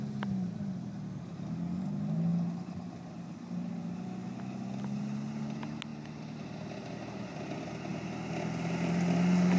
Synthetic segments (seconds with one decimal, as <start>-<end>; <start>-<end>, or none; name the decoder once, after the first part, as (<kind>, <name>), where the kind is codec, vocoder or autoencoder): none